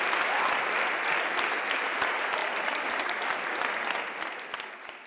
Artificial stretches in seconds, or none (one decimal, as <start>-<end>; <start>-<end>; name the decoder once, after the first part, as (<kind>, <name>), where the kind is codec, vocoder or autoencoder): none